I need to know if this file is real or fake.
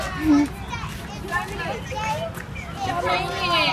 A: real